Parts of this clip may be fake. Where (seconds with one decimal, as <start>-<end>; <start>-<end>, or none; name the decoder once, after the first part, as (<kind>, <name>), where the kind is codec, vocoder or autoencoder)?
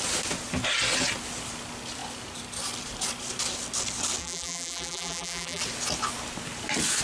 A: 4.2-5.6 (vocoder, BigVGAN v2)